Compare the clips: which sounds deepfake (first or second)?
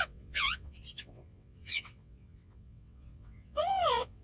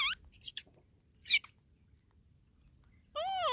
first